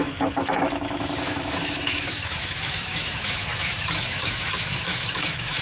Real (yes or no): no